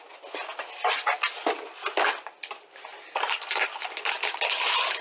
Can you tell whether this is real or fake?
real